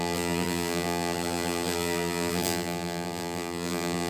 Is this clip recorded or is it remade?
remade